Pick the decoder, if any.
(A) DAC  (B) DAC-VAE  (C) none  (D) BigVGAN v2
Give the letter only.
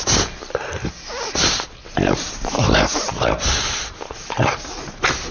C